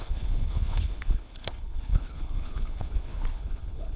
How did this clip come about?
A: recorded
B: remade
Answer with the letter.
B